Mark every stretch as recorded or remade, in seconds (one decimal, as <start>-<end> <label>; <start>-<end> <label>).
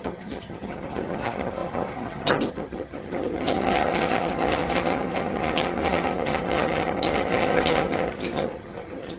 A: 0.0-9.2 remade